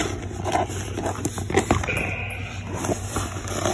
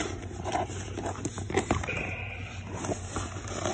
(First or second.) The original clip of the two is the first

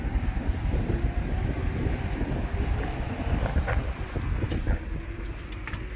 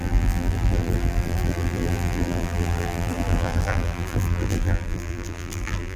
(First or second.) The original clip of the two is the first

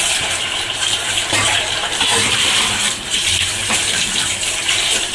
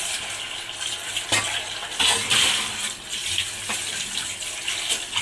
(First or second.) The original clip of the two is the second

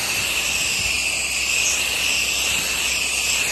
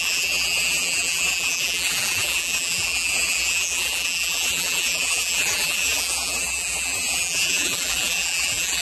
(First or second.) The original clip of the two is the first